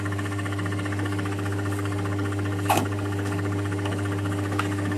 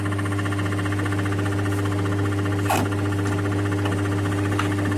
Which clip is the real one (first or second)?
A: second